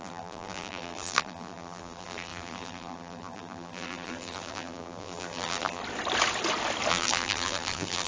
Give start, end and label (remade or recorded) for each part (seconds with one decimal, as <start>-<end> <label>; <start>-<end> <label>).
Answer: 0.0-5.8 remade; 5.8-6.9 recorded; 6.9-8.1 remade

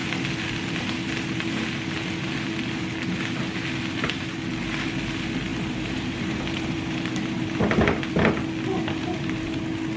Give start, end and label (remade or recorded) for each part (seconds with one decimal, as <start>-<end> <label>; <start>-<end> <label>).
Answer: 0.0-5.5 recorded; 5.5-7.6 remade; 7.6-9.0 recorded; 9.0-9.6 remade; 9.6-10.0 recorded

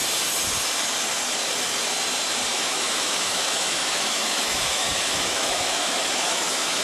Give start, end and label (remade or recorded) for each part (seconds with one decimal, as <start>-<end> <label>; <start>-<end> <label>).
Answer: 0.0-2.5 recorded; 2.5-6.8 remade

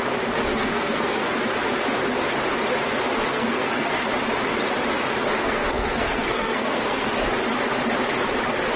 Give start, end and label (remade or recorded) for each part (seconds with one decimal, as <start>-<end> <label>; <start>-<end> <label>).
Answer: 0.0-0.5 recorded; 0.5-1.4 remade; 1.4-3.3 recorded; 3.3-4.1 remade; 4.1-5.4 recorded; 5.4-7.1 remade; 7.1-8.8 recorded

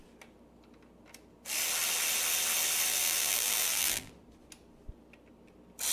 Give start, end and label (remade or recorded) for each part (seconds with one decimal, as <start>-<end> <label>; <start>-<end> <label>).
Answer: 0.0-2.9 recorded; 2.9-4.1 remade; 4.1-5.9 recorded

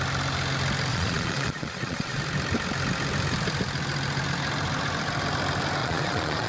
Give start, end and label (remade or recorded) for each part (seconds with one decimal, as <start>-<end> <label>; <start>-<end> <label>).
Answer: 0.0-0.9 recorded; 0.9-2.2 remade; 2.2-5.8 recorded; 5.8-6.5 remade

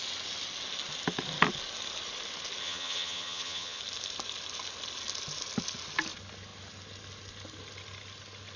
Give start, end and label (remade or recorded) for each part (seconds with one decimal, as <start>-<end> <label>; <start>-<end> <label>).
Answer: 0.0-2.6 recorded; 2.6-3.8 remade; 3.8-8.6 recorded

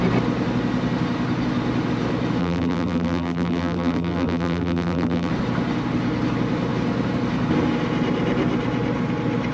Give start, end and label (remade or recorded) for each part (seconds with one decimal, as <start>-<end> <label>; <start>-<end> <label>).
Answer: 0.0-2.4 recorded; 2.4-5.3 remade; 5.3-9.5 recorded